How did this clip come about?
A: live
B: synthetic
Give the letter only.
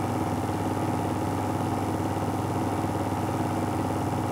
A